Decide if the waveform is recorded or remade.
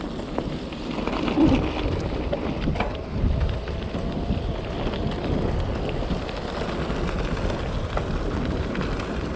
recorded